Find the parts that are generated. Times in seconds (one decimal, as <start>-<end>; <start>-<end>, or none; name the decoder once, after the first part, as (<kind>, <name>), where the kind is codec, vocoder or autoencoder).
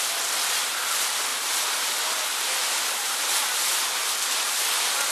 1.3-4.1 (vocoder, BigVGAN v2)